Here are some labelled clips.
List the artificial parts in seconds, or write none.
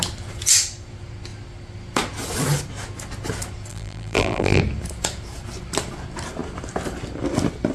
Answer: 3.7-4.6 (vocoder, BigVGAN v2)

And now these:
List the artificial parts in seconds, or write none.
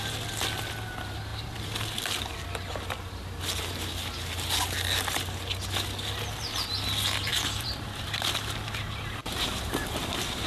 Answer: 1.3-2.0 (vocoder, BigVGAN v2); 7.3-8.3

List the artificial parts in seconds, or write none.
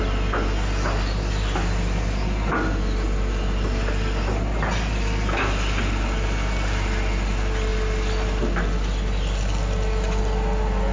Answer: none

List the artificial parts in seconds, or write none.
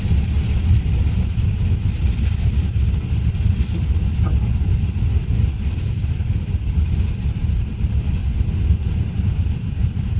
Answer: 5.2-7.9 (vocoder, BigVGAN v2)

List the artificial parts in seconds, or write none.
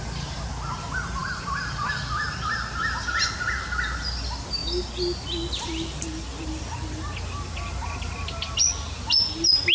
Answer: 1.2-2.0 (vocoder, BigVGAN v2)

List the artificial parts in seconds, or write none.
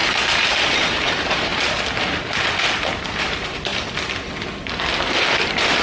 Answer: 0.0-1.5 (vocoder, BigVGAN v2); 3.2-3.7; 5.1-5.8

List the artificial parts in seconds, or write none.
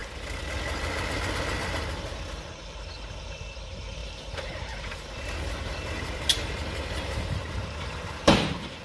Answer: 4.0-8.8 (vocoder, BigVGAN v2)